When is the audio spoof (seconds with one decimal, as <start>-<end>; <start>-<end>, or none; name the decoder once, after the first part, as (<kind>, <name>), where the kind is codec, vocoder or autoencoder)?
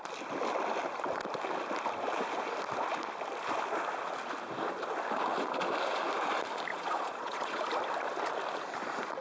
6.7-7.6 (vocoder, Vocos)